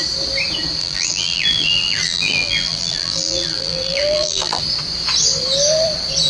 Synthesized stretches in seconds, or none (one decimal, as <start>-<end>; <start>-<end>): 0.8-4.6